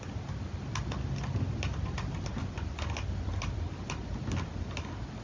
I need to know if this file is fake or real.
real